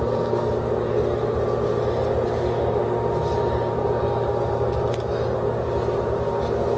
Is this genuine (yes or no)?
yes